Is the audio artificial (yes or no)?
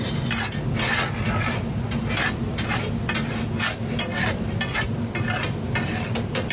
no